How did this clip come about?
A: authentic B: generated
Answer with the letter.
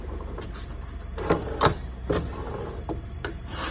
B